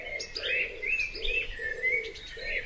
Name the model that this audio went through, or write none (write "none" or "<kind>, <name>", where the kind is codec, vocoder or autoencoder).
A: none